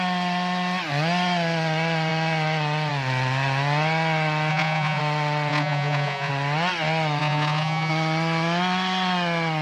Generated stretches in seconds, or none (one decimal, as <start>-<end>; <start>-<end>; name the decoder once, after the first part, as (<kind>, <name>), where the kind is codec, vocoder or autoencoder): 4.5-5.0 (vocoder, Vocos); 5.5-6.3; 7.2-7.9